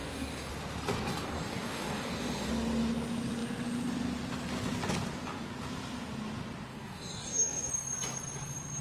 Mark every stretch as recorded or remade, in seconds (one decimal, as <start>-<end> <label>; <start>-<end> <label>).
0.0-0.5 remade; 0.5-1.1 recorded; 1.1-2.5 remade; 2.5-6.7 recorded; 6.7-7.7 remade; 7.7-8.8 recorded